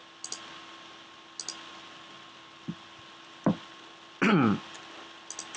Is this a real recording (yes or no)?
yes